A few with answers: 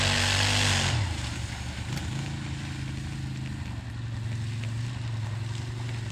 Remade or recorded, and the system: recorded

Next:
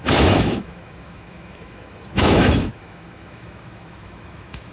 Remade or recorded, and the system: remade, autoencoder, DAC-VAE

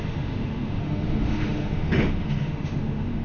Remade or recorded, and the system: remade, autoencoder, DAC-VAE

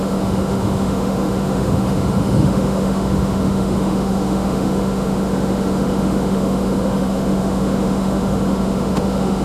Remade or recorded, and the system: remade, autoencoder, DAC-VAE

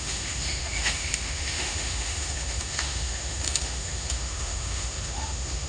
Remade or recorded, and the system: remade, autoencoder, DAC-VAE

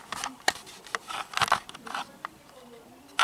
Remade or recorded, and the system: recorded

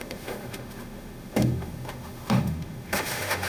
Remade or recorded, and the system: remade, autoencoder, DAC-VAE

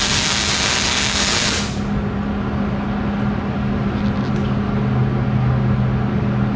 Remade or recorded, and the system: recorded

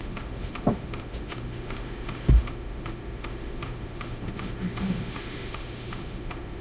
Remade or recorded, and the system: remade, autoencoder, DAC-VAE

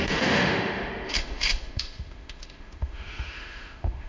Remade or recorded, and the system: remade, autoencoder, DAC-VAE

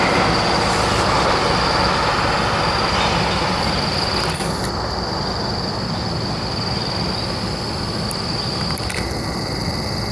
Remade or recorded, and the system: recorded